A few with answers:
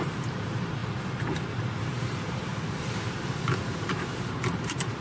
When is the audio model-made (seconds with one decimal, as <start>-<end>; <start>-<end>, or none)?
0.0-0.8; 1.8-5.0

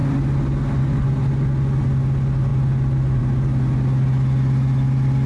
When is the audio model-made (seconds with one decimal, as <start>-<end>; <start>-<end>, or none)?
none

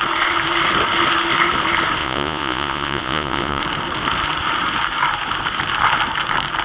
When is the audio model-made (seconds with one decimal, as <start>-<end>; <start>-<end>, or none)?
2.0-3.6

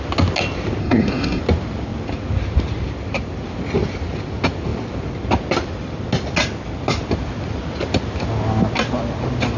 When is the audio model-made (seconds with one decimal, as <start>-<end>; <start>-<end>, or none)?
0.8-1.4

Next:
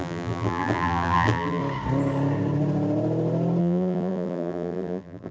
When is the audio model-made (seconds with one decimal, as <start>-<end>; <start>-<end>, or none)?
0.0-1.6; 3.6-5.3

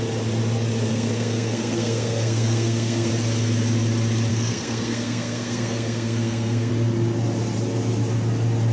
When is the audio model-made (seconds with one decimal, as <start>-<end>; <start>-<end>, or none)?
0.9-3.1; 4.3-6.7